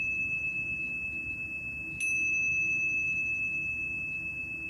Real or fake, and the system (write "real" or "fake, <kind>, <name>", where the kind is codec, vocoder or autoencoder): real